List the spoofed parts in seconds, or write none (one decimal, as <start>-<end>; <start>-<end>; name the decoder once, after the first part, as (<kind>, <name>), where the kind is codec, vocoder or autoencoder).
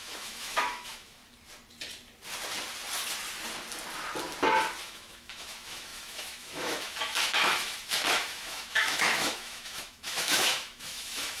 0.0-1.2 (autoencoder, DAC-VAE); 4.8-11.4